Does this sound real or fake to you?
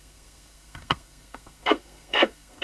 fake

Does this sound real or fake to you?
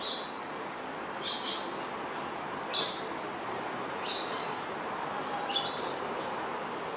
real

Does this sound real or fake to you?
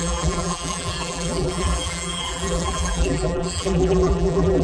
fake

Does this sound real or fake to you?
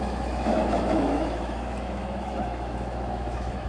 fake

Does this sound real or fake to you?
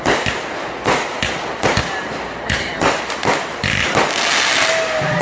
real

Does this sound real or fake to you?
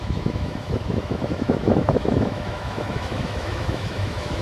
fake